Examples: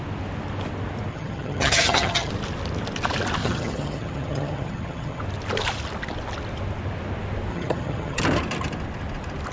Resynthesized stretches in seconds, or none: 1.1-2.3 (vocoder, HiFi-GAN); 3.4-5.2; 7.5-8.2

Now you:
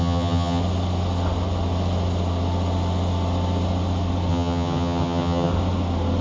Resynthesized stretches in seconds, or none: 0.0-0.6 (vocoder, HiFi-GAN); 4.3-5.5